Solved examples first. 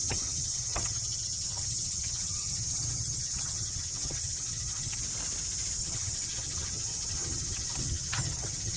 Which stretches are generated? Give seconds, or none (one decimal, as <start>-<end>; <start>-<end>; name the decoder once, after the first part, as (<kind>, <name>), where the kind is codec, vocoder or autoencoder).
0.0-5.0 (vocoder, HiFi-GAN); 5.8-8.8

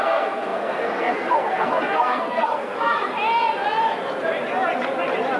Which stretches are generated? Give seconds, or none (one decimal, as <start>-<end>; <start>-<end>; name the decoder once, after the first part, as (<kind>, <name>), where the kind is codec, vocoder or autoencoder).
0.0-3.1 (codec, SNAC)

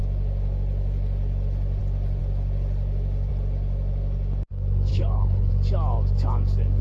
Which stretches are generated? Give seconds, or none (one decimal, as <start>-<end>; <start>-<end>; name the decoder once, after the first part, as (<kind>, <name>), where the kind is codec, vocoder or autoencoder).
4.9-5.5 (codec, HILCodec)

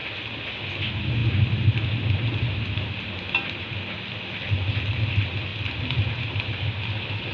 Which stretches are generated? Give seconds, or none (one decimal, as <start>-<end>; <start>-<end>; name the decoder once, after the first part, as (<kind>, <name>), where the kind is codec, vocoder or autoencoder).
none

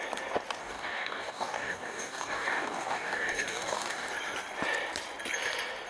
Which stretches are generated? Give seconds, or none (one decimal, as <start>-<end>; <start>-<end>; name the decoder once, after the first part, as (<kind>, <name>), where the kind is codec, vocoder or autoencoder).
0.6-4.1 (codec, DAC)

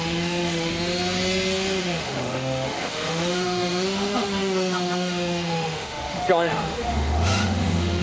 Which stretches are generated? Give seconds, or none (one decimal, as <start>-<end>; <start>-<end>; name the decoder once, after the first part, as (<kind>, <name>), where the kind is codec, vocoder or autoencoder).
0.0-0.7 (autoencoder, DAC-VAE); 1.8-8.0

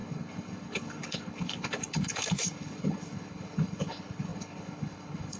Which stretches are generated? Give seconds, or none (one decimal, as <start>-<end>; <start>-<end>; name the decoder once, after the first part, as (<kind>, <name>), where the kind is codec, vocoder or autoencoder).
0.0-5.4 (codec, HILCodec)